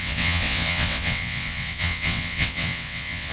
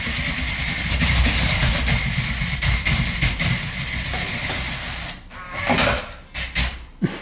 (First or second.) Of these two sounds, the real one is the second